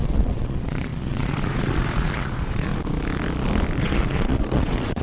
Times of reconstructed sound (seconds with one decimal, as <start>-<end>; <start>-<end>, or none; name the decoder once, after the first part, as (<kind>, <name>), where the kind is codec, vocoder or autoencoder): 0.0-2.7 (vocoder, Vocos); 3.8-5.0